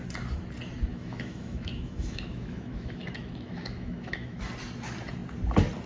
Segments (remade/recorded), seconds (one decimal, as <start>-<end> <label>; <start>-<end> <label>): 0.0-0.9 recorded; 0.9-4.4 remade; 4.4-5.9 recorded